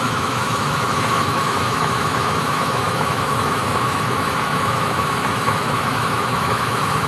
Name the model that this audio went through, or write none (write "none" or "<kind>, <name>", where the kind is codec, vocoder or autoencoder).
autoencoder, DAC-VAE